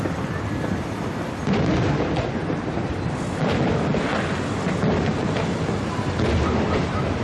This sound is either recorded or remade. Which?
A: recorded